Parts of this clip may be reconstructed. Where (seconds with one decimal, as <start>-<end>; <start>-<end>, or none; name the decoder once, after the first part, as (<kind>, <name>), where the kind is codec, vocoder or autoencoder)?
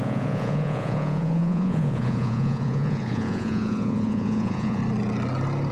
0.0-4.8 (vocoder, Vocos)